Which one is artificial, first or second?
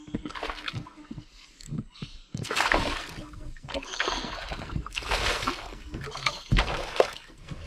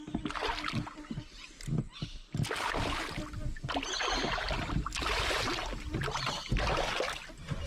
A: first